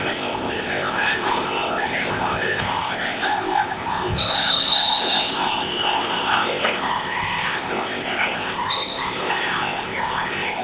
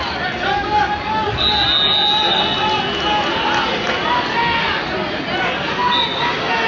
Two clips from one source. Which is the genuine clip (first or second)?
second